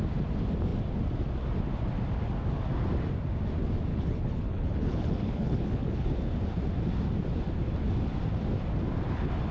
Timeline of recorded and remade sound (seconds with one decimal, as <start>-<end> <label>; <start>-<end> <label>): 0.0-3.9 recorded; 3.9-6.1 remade; 6.1-9.5 recorded